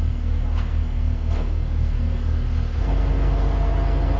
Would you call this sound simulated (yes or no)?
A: yes